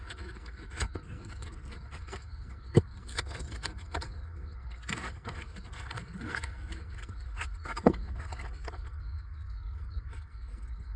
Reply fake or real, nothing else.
fake